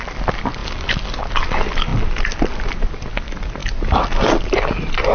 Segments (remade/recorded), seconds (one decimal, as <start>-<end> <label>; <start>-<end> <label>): 0.0-5.1 recorded